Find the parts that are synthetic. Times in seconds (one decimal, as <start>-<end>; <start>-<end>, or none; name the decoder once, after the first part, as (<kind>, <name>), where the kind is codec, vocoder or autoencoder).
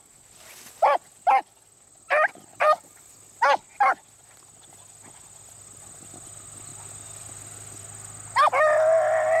2.5-3.1 (vocoder, BigVGAN v2)